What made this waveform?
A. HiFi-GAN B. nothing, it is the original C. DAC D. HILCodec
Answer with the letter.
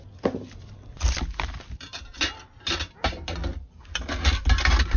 B